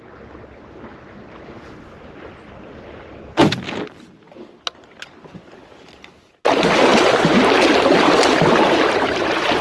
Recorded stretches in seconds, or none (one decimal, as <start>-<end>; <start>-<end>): 0.0-9.6

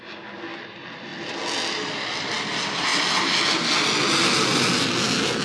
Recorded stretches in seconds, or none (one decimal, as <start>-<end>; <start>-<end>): 0.0-5.4